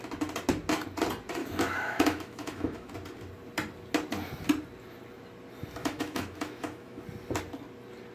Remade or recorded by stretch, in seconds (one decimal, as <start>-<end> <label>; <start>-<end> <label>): 0.0-1.4 recorded; 1.4-2.9 remade; 2.9-5.8 recorded; 5.8-7.0 remade; 7.0-8.1 recorded